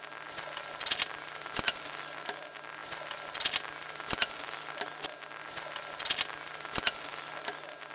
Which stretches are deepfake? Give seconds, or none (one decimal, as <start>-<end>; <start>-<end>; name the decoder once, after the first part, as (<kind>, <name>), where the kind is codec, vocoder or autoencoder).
none